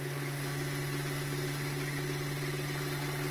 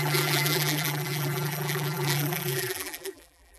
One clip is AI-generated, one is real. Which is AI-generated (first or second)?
second